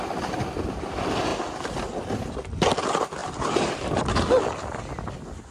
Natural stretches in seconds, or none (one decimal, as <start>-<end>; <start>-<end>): 0.0-5.5